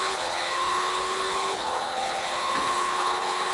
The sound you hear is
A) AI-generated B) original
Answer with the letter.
A